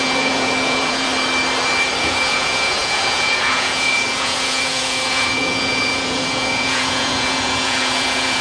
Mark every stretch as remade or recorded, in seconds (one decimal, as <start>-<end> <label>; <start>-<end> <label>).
0.0-1.1 remade; 1.1-2.0 recorded; 2.0-8.4 remade